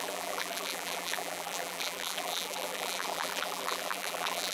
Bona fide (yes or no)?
no